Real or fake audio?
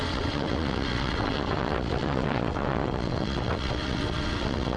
fake